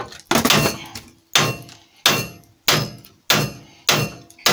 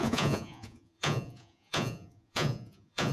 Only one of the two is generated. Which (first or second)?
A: second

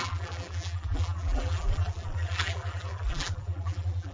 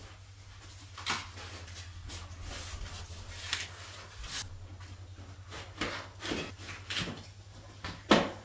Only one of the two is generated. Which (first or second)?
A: first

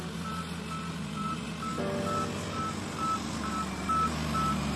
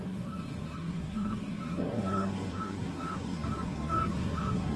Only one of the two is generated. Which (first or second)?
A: second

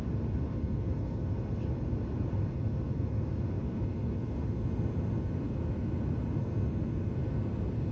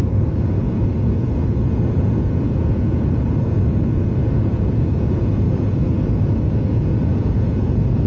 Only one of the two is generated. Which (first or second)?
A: second